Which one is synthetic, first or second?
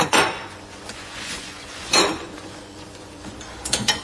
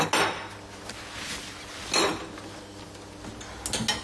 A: first